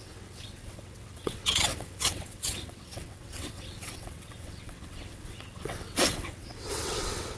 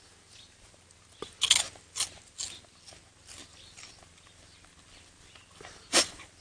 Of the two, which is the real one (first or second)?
second